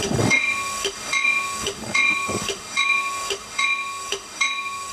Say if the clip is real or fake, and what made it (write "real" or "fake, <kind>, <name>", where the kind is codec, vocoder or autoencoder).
fake, autoencoder, DAC-VAE